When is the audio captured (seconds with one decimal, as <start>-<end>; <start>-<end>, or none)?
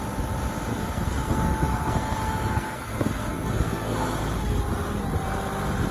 0.0-0.7; 4.2-5.9